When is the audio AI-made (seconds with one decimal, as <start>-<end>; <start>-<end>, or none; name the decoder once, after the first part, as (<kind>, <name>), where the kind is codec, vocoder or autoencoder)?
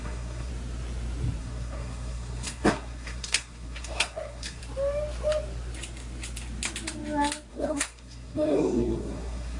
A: 0.0-0.5 (codec, SNAC); 1.4-4.6; 7.5-9.6